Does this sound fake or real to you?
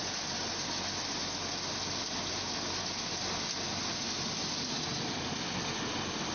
real